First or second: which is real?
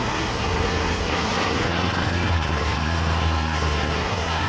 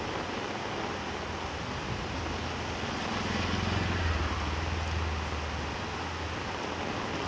second